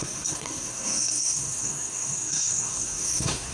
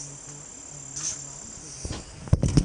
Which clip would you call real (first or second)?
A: second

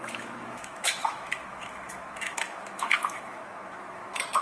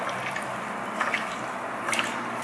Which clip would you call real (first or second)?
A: second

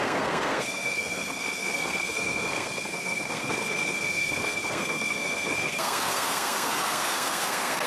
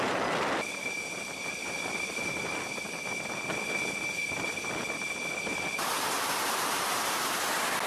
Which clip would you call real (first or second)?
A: second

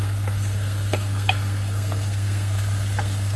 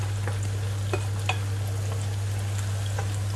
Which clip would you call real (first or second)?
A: second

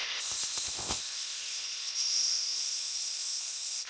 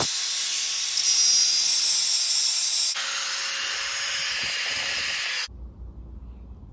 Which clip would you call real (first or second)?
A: second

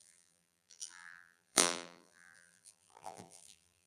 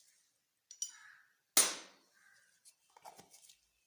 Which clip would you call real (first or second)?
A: second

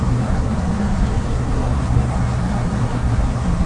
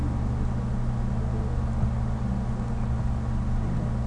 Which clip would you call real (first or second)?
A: second